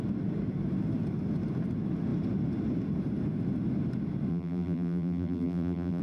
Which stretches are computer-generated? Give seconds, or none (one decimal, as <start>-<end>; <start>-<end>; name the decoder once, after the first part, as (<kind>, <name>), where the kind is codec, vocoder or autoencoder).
4.3-6.0 (vocoder, BigVGAN v2)